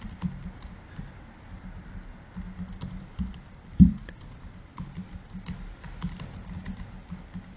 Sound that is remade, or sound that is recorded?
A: recorded